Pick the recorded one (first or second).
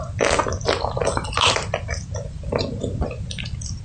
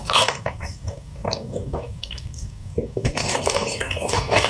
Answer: first